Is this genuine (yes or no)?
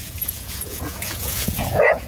no